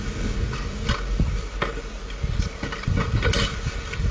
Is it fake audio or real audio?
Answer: real